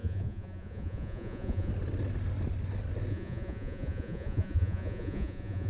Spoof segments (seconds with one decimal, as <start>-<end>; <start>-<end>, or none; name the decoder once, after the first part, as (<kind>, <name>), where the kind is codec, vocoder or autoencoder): 0.0-1.7 (vocoder, Vocos); 3.1-5.7